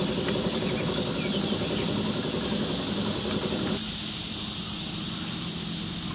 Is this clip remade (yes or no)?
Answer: no